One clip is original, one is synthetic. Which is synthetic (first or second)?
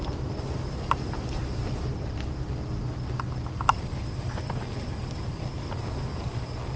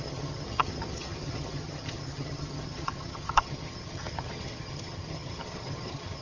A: second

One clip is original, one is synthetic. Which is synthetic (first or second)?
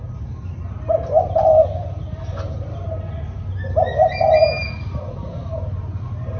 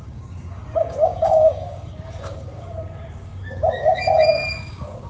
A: second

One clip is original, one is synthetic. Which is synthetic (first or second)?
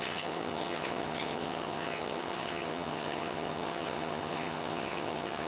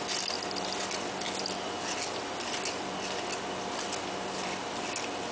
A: first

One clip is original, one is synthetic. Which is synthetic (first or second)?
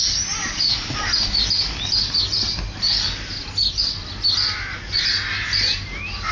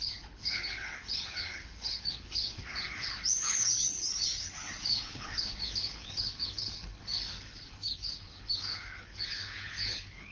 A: second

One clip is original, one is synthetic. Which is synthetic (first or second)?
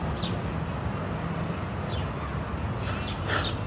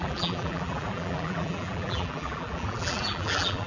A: second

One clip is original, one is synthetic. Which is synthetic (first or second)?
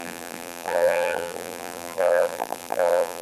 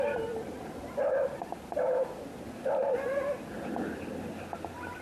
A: first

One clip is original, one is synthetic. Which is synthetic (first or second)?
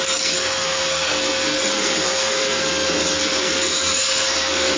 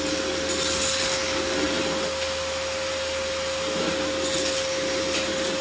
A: first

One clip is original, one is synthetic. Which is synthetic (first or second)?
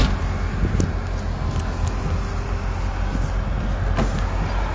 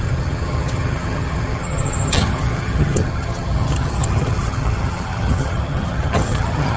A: second